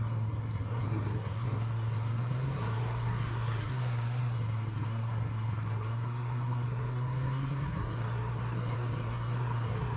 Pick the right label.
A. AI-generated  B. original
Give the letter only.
A